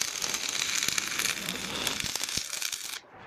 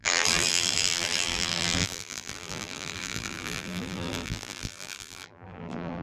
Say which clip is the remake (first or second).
second